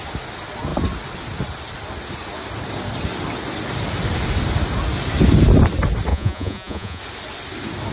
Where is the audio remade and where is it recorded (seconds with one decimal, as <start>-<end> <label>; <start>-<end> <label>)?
0.0-6.1 recorded; 6.1-7.0 remade; 7.0-7.9 recorded